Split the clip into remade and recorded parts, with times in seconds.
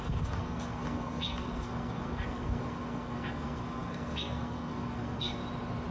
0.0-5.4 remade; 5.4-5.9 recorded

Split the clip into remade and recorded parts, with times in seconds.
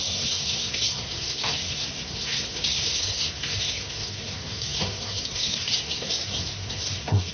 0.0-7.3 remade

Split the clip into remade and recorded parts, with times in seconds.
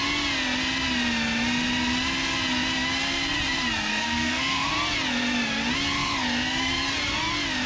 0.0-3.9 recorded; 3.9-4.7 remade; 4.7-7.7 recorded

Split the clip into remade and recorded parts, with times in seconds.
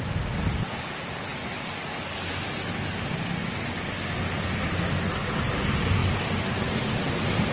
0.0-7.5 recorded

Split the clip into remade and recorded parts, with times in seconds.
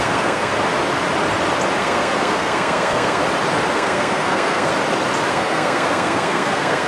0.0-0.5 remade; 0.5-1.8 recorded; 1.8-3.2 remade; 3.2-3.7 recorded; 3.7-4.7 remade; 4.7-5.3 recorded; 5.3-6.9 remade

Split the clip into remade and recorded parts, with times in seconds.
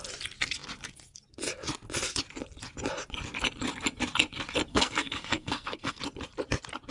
0.0-4.7 recorded; 4.7-6.0 remade; 6.0-6.9 recorded